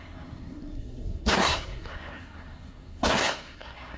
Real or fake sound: fake